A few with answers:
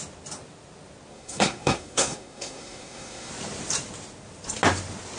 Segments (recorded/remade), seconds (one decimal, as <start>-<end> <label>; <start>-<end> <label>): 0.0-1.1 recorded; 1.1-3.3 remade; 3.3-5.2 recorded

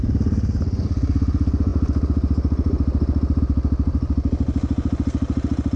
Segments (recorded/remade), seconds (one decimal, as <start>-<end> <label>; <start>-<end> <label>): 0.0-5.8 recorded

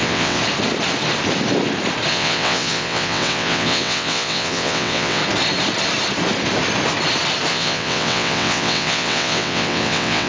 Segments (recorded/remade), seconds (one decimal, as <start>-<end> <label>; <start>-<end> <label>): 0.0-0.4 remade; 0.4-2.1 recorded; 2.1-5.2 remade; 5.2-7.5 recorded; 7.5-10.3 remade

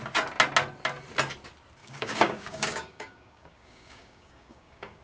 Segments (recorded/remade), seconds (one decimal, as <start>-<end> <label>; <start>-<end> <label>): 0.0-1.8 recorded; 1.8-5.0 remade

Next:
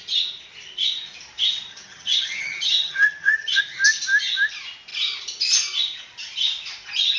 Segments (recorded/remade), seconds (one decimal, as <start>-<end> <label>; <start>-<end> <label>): 0.0-1.7 recorded; 1.7-3.6 remade; 3.6-7.2 recorded

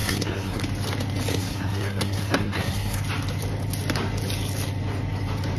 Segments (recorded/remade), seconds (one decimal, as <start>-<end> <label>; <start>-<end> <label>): 0.0-0.6 remade; 0.6-1.3 recorded; 1.3-3.0 remade; 3.0-5.6 recorded